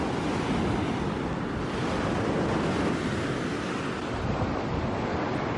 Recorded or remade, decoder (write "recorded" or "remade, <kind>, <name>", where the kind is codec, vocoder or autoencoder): recorded